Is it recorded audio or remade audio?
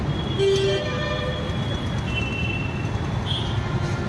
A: recorded